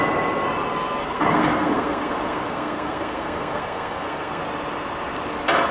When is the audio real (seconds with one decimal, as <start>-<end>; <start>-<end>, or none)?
0.0-1.0; 4.4-5.7